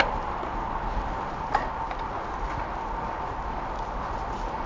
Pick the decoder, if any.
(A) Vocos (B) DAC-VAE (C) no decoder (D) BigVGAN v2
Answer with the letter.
C